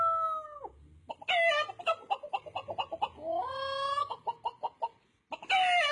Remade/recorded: recorded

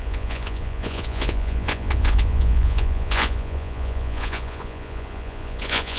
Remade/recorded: remade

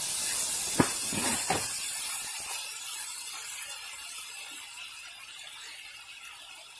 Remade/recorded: recorded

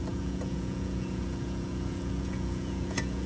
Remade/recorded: remade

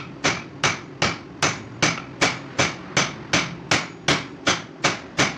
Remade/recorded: recorded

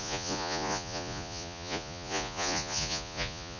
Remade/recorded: remade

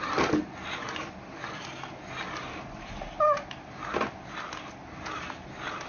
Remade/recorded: recorded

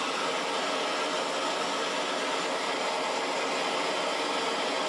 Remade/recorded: recorded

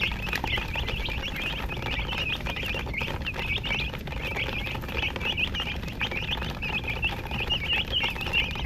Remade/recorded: recorded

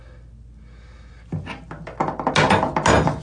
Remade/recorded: recorded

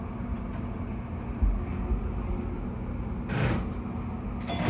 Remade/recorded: recorded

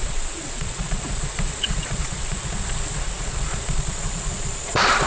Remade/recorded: remade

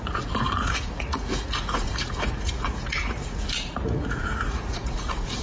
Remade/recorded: remade